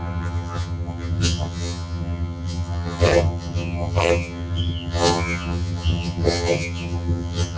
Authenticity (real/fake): fake